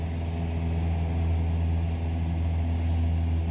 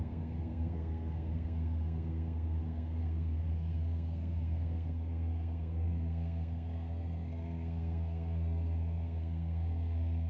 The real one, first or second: first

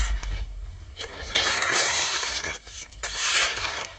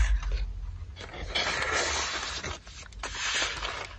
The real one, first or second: second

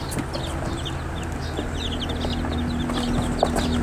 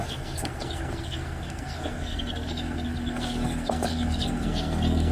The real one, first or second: first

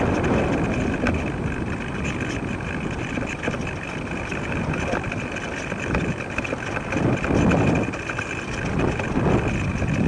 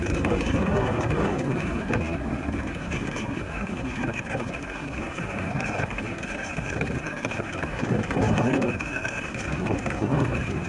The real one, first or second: first